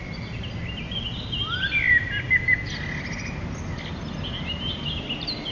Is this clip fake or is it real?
real